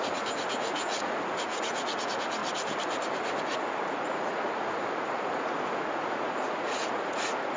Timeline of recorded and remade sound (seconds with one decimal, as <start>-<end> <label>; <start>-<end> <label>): 0.0-2.4 remade; 2.4-3.4 recorded; 3.4-7.6 remade